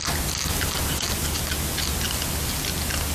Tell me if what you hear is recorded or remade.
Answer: recorded